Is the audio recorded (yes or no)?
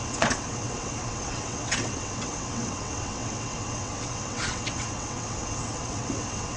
no